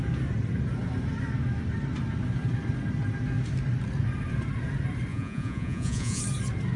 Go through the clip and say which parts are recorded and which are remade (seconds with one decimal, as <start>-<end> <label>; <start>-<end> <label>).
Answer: 0.0-5.1 recorded; 5.1-6.2 remade; 6.2-6.8 recorded